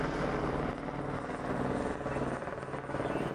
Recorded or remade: recorded